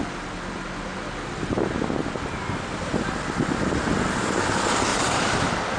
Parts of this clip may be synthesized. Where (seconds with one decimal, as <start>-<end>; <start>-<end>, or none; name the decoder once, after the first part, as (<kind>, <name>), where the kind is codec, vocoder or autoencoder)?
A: 4.9-5.8 (vocoder, BigVGAN v2)